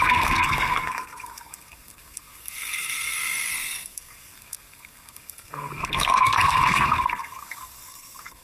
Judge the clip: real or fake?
fake